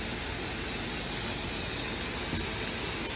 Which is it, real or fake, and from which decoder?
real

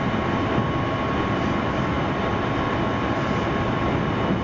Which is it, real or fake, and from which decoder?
real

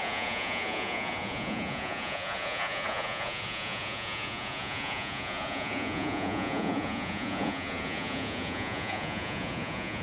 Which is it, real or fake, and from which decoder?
fake, vocoder, Vocos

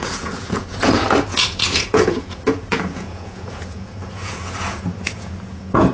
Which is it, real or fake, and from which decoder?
fake, vocoder, Vocos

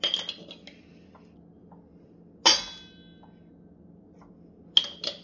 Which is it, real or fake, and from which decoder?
real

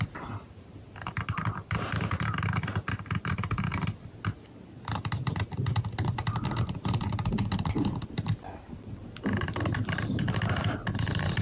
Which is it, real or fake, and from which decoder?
real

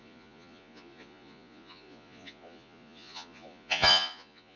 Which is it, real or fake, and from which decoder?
fake, vocoder, Vocos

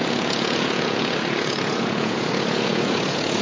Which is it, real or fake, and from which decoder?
fake, vocoder, Vocos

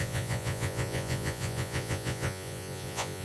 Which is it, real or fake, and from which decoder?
fake, vocoder, Vocos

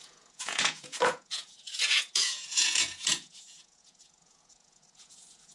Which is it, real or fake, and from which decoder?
fake, vocoder, Vocos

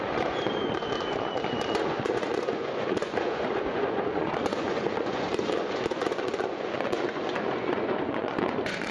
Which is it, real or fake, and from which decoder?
fake, vocoder, Vocos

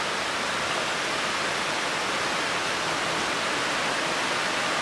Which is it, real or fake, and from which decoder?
real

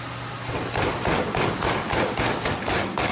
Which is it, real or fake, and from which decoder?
real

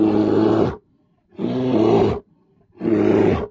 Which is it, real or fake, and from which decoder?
real